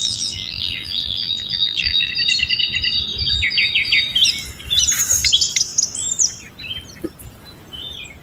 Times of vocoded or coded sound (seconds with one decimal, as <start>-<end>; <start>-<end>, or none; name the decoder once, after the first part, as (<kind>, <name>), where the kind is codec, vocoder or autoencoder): 0.0-2.1 (vocoder, BigVGAN v2)